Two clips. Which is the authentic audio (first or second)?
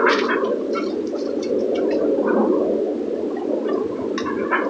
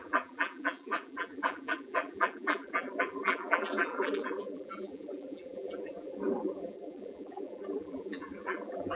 first